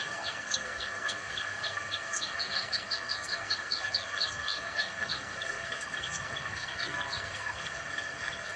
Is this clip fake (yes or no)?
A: yes